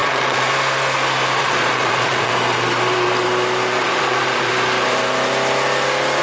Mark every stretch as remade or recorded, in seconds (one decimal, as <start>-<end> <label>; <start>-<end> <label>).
0.0-0.5 remade; 0.5-1.4 recorded; 1.4-2.3 remade; 2.3-3.8 recorded; 3.8-4.5 remade; 4.5-6.2 recorded